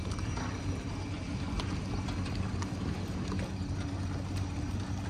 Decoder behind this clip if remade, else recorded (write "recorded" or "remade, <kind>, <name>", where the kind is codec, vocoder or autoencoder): recorded